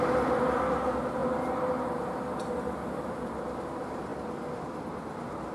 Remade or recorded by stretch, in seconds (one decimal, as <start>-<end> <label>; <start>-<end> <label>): 0.0-5.5 recorded